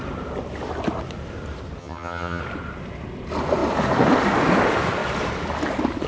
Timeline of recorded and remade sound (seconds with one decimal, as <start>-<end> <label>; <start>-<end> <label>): 0.0-1.8 recorded; 1.8-2.4 remade; 2.4-6.1 recorded